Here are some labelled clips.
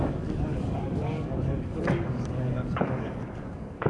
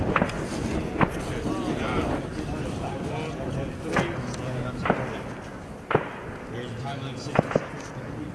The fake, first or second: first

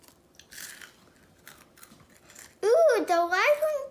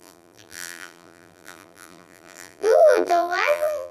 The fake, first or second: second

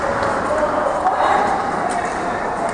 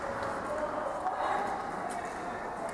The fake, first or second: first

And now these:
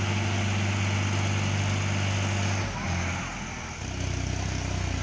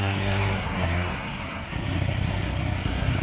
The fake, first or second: second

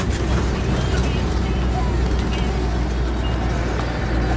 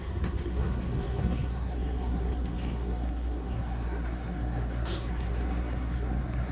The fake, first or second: second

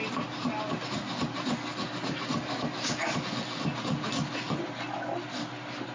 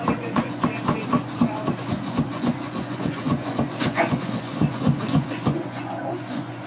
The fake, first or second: second